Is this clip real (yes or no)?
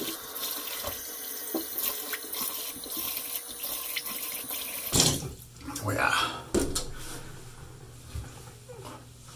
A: yes